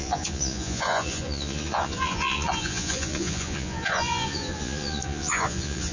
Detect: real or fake fake